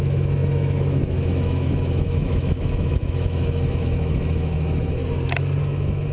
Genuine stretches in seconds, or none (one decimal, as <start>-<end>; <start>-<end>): 5.0-5.6